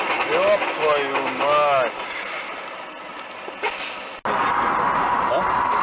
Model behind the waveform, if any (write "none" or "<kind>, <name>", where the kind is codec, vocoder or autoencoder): none